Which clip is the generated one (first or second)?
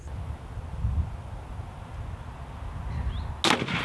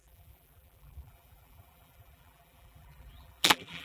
second